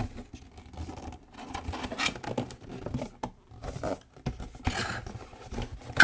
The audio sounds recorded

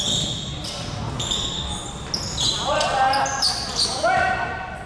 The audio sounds recorded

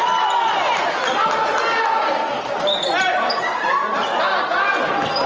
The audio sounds recorded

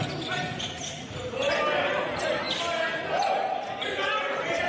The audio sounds recorded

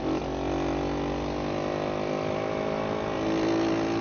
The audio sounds recorded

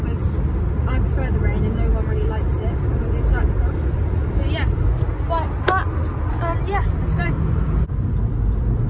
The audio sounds recorded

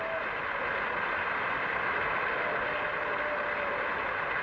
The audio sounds recorded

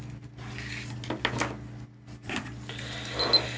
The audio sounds recorded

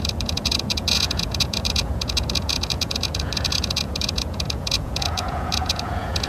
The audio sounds remade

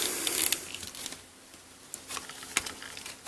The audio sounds recorded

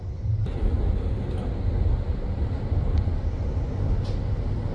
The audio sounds recorded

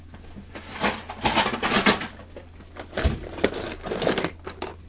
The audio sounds recorded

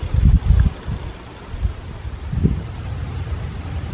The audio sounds recorded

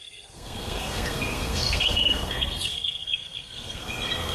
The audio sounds remade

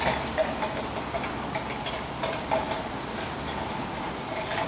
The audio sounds recorded